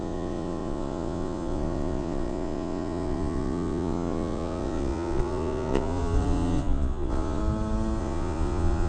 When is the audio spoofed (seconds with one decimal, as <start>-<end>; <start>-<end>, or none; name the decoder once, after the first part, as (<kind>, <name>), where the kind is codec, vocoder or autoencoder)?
0.0-7.4 (vocoder, Vocos); 8.0-8.9